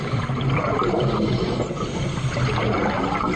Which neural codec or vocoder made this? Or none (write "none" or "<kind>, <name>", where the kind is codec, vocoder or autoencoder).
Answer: vocoder, BigVGAN v2